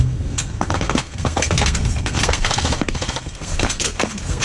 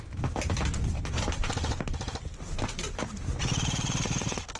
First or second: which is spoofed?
first